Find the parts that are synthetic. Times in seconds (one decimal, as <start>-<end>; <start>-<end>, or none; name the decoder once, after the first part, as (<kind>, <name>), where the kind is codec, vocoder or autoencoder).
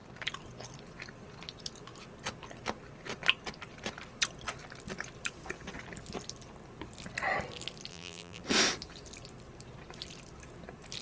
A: 7.9-8.4 (vocoder, BigVGAN v2)